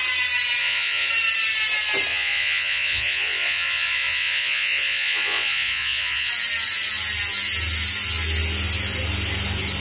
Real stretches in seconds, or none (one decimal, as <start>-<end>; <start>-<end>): 0.0-0.6; 1.1-2.1; 6.3-9.8